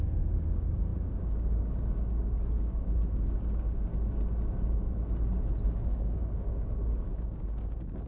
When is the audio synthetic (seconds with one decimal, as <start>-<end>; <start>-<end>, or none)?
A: 0.0-3.9; 5.5-8.1